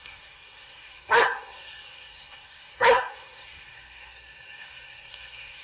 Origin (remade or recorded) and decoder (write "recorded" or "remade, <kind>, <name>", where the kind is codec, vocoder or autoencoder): remade, codec, SNAC